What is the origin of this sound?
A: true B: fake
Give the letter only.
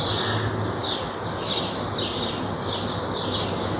A